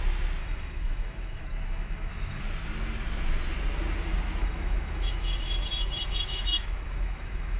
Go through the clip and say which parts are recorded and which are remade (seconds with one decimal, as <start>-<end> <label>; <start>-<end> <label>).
0.0-0.4 recorded; 0.4-2.4 remade; 2.4-4.4 recorded; 4.4-7.6 remade